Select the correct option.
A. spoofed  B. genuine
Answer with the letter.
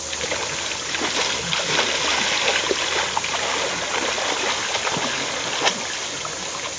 B